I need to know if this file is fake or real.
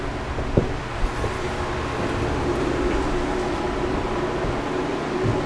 real